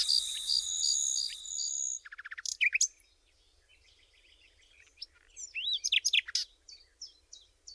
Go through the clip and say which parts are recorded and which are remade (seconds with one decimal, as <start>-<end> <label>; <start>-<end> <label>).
0.0-7.7 recorded